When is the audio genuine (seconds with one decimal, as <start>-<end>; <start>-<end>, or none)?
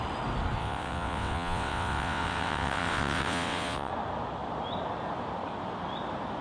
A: 0.0-0.6; 3.9-6.4